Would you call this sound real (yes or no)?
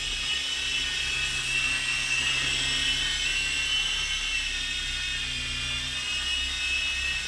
yes